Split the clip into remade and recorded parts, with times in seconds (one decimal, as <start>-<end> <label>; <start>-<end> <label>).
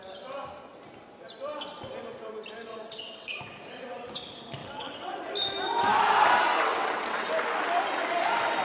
0.0-2.7 recorded; 2.7-3.4 remade; 3.4-4.6 recorded; 4.6-5.2 remade; 5.2-6.7 recorded; 6.7-7.3 remade; 7.3-8.6 recorded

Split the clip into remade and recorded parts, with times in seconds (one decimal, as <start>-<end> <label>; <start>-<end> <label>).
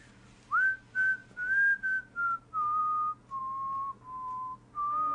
0.0-5.1 recorded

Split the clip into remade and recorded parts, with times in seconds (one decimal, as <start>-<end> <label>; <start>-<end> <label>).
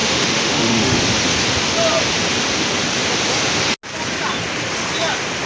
0.0-1.0 remade; 1.0-5.5 recorded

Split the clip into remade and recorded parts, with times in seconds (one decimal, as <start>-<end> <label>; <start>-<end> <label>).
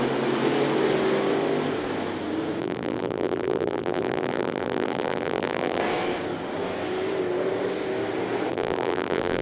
0.0-2.6 recorded; 2.6-5.8 remade; 5.8-8.5 recorded; 8.5-9.4 remade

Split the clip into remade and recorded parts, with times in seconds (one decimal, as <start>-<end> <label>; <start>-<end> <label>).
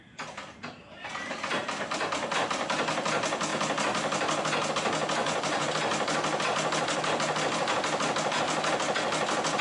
0.0-5.2 recorded; 5.2-5.7 remade; 5.7-9.6 recorded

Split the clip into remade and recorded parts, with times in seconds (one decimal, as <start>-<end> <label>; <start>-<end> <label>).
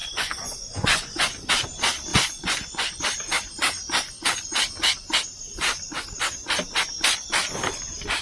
0.0-1.5 remade; 1.5-2.1 recorded; 2.1-3.0 remade; 3.0-8.2 recorded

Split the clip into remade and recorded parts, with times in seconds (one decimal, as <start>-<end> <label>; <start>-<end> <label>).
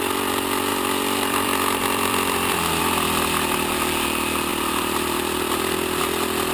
0.0-0.7 recorded; 0.7-2.8 remade; 2.8-4.5 recorded; 4.5-6.0 remade; 6.0-6.5 recorded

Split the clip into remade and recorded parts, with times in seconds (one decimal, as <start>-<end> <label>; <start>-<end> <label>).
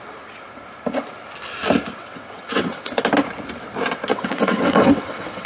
0.0-2.0 recorded; 2.0-3.0 remade; 3.0-4.1 recorded; 4.1-5.5 remade